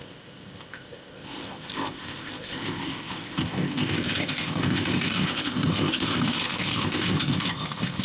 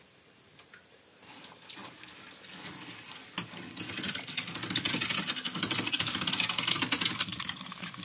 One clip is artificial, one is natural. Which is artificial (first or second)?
first